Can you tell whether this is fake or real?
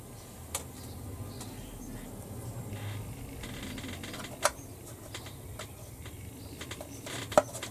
real